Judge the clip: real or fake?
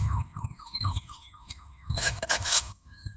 fake